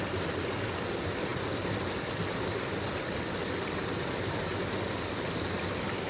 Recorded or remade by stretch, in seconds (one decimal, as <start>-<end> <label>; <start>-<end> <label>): 0.0-6.1 recorded